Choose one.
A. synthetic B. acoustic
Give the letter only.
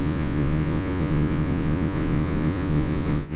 A